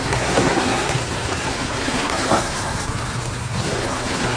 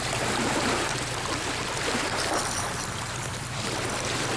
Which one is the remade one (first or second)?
first